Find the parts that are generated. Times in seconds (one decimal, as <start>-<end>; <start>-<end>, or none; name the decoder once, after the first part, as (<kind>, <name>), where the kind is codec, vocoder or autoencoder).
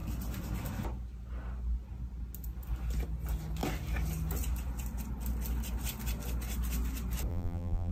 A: 7.3-7.9 (vocoder, BigVGAN v2)